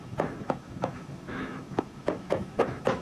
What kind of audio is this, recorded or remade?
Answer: remade